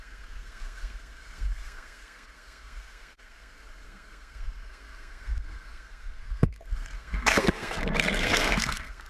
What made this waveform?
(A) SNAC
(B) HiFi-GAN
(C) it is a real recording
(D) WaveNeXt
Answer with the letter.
A